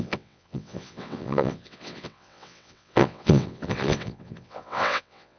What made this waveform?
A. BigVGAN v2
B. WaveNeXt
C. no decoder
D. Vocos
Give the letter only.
B